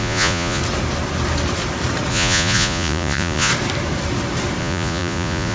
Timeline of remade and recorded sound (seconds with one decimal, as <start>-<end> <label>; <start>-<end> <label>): 0.0-0.6 remade; 0.6-2.1 recorded; 2.1-3.5 remade; 3.5-4.6 recorded; 4.6-5.5 remade